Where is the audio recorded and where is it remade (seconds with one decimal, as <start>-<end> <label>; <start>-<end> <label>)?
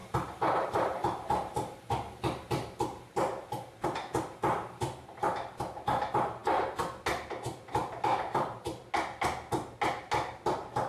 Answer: 0.0-10.9 recorded